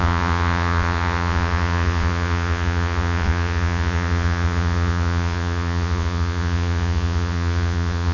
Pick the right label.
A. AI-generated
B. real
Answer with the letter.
A